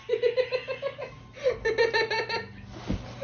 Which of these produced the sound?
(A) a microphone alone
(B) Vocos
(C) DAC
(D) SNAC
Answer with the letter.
A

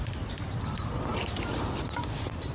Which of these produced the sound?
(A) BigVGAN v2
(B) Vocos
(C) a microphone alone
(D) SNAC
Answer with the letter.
C